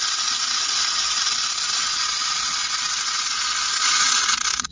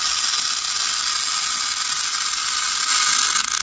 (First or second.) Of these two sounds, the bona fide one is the second